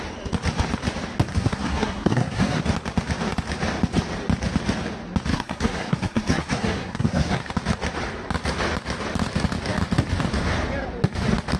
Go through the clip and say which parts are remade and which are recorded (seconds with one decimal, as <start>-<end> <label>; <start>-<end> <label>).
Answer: 0.0-1.3 recorded; 1.3-2.6 remade; 2.6-5.3 recorded; 5.3-7.5 remade; 7.5-11.6 recorded